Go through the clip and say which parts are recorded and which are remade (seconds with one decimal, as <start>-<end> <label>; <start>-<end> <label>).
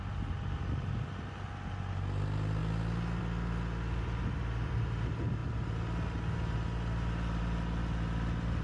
0.0-8.6 recorded